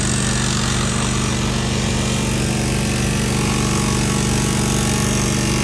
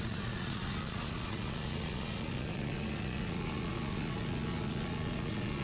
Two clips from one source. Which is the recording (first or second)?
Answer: first